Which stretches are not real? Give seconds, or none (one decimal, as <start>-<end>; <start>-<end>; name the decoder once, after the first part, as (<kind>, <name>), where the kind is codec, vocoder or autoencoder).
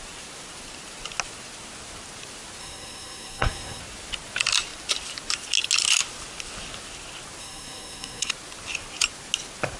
2.6-3.8 (codec, SNAC); 7.4-8.3